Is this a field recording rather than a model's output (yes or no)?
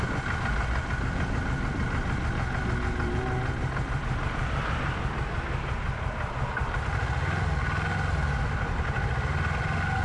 yes